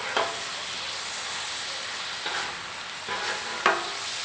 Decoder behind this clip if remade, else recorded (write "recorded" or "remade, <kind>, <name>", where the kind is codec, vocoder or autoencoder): recorded